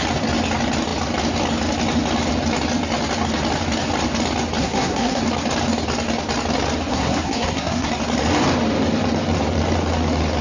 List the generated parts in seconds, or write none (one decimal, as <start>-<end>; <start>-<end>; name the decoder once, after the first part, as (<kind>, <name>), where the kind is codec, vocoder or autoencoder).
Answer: 4.6-5.2 (codec, SNAC); 6.9-7.9